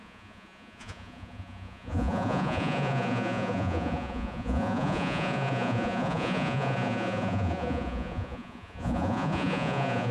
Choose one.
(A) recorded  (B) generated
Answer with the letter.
B